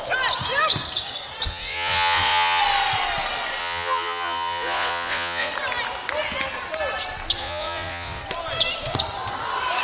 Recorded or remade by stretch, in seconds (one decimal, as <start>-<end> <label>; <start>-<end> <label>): 0.0-1.5 recorded; 1.5-2.6 remade; 2.6-3.6 recorded; 3.6-5.5 remade; 5.5-7.4 recorded; 7.4-8.2 remade; 8.2-9.8 recorded